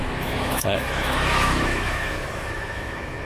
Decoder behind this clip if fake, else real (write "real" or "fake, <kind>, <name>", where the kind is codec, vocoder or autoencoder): fake, autoencoder, DAC-VAE